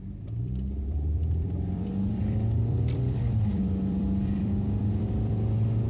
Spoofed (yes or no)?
yes